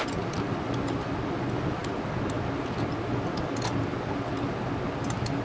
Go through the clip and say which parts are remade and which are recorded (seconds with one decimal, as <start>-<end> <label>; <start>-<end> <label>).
0.0-5.4 recorded